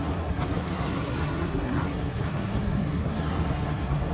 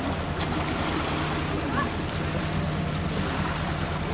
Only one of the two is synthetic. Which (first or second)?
first